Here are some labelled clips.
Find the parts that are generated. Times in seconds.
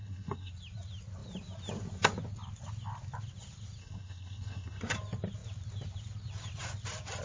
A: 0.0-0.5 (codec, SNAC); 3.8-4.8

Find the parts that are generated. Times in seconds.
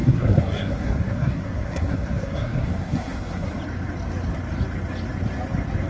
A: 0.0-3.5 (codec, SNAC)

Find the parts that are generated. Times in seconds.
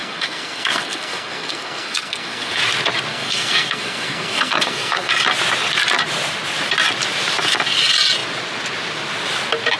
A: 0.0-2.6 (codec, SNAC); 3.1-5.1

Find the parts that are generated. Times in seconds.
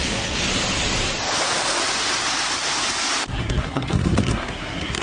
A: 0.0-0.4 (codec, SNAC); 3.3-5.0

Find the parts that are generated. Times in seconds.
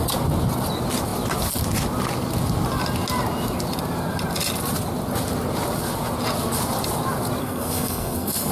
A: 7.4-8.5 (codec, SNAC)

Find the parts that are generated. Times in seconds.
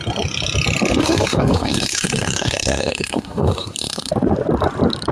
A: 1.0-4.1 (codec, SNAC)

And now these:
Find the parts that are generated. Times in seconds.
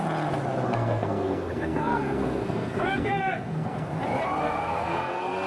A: 0.7-4.0 (codec, SNAC); 4.4-5.5